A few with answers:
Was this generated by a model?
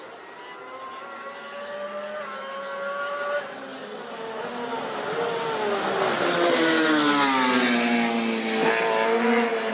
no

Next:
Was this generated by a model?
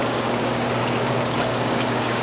yes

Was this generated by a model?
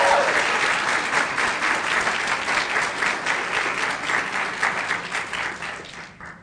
no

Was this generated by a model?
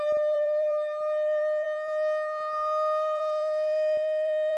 yes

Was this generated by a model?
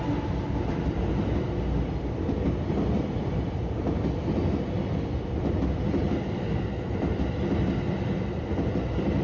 no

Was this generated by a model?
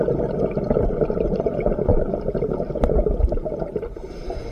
no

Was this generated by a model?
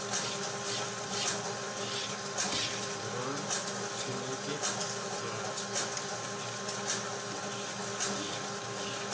no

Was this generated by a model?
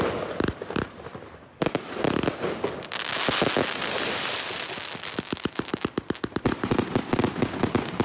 no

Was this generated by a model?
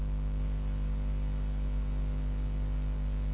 no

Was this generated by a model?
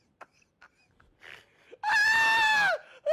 yes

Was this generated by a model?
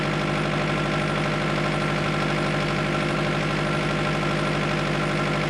no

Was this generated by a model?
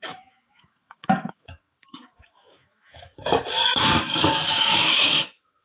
yes